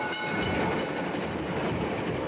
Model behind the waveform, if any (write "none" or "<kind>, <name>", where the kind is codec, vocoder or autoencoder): none